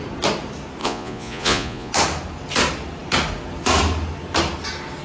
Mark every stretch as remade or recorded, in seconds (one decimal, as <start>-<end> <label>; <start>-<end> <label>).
0.0-0.8 recorded; 0.8-1.9 remade; 1.9-5.0 recorded